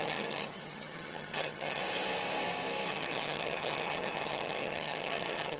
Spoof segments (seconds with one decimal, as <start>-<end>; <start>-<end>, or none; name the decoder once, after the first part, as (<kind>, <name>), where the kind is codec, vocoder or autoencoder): 0.0-1.8 (vocoder, HiFi-GAN); 2.9-5.6